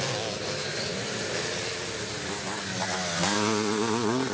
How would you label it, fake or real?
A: real